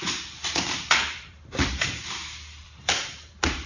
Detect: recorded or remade remade